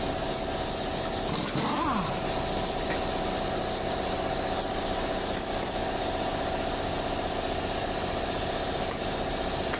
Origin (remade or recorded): recorded